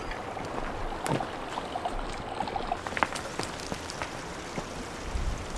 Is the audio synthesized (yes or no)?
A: no